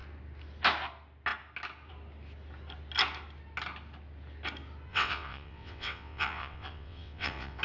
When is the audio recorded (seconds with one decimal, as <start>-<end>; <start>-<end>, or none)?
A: 0.0-4.9